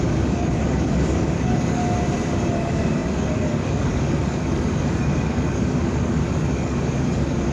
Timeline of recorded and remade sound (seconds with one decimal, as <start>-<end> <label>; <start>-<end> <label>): 0.0-1.8 remade; 1.8-2.5 recorded; 2.5-7.5 remade